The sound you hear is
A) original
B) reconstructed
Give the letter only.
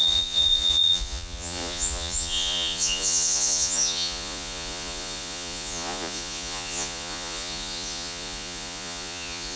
B